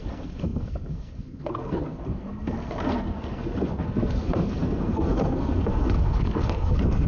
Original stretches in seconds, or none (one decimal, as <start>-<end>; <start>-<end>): none